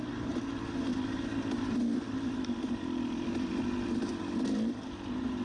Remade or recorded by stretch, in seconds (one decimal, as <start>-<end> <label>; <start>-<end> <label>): 0.0-5.4 recorded